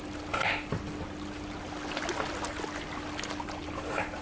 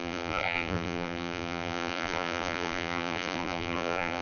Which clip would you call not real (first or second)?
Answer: second